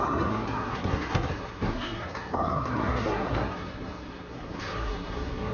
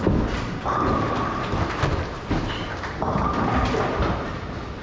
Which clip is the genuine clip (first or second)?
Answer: second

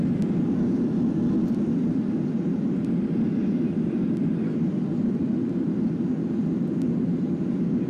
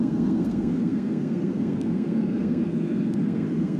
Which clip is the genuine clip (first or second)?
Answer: first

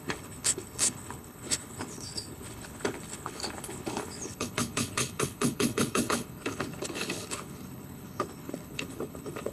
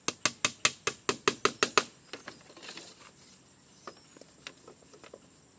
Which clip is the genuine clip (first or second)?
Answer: second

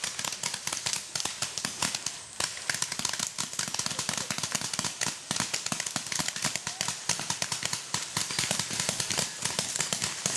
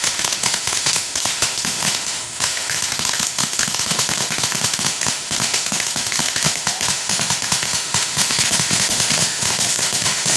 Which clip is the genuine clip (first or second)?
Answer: first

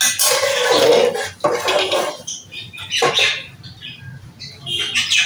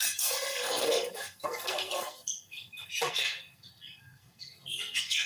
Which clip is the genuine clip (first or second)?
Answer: first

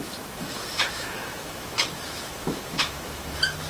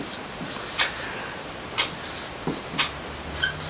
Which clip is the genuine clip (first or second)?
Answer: second